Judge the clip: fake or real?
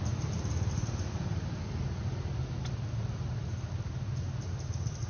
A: real